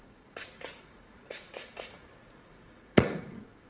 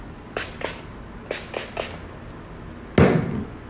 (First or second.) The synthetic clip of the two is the first